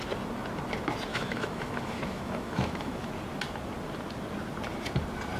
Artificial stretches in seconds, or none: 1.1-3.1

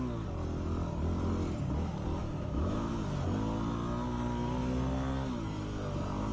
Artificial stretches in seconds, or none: 2.2-2.9

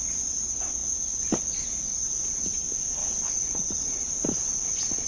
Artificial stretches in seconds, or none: none

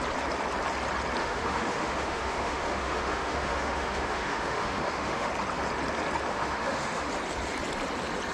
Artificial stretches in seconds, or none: 1.2-5.3; 6.3-7.1

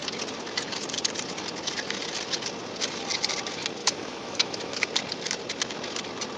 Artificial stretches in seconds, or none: 3.8-4.8

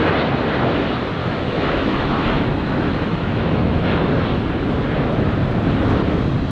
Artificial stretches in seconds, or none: 1.2-4.0